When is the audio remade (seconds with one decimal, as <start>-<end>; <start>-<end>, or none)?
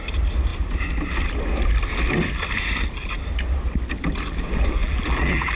4.8-5.5